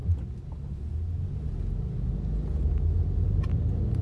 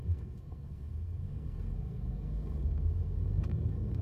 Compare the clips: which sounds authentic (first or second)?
first